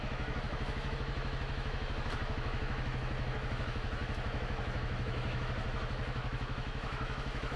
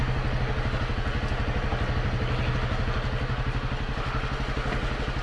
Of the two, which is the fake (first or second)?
first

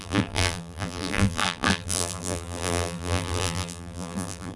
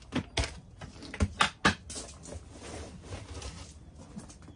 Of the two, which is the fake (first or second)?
first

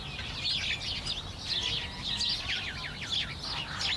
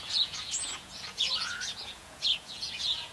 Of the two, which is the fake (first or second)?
second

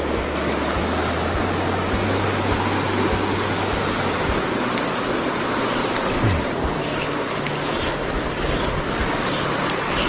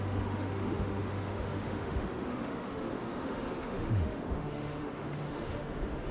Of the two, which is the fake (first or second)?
second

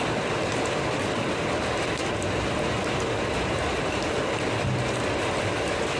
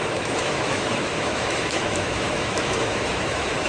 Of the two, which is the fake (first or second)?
second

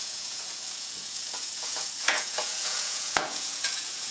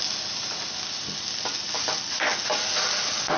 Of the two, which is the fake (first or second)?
first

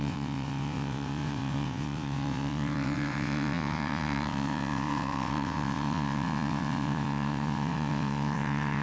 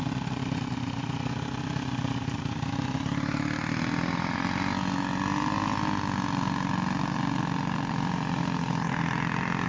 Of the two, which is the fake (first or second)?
first